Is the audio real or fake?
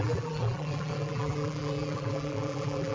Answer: fake